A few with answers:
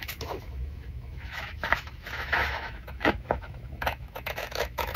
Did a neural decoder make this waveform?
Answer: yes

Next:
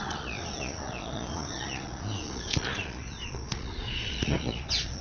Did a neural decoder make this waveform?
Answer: yes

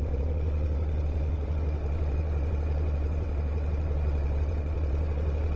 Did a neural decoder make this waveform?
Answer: yes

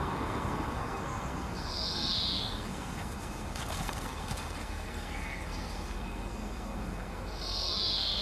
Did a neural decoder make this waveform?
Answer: yes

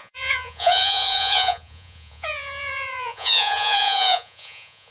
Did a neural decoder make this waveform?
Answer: yes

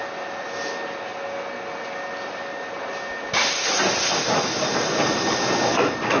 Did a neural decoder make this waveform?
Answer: no